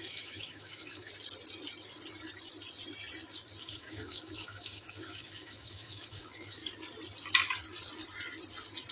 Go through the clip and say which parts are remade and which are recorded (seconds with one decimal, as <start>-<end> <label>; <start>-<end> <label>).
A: 0.0-1.1 remade; 1.1-3.6 recorded; 3.6-6.6 remade; 6.6-8.9 recorded

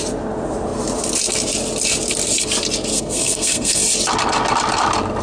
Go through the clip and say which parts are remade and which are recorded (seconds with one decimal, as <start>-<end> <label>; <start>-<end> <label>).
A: 0.0-2.9 recorded; 2.9-3.8 remade; 3.8-5.2 recorded